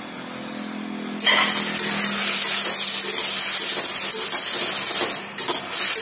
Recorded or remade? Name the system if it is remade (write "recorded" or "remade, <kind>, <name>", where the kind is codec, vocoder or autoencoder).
recorded